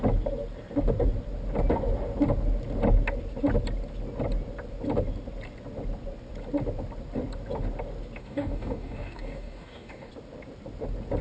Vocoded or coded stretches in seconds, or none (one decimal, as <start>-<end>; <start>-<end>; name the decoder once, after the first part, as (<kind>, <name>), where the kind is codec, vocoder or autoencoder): 8.2-10.1 (codec, DAC)